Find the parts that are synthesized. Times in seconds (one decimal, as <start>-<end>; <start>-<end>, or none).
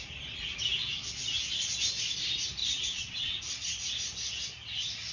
2.6-3.4